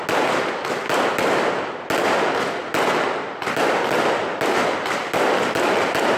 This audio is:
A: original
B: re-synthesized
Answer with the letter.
A